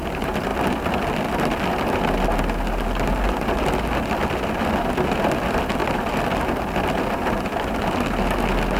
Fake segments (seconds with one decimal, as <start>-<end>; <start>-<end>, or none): none